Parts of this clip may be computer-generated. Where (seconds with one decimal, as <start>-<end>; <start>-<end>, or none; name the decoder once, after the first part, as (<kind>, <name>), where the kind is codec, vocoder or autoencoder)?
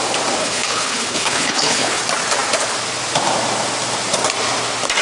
0.4-2.0 (codec, HILCodec)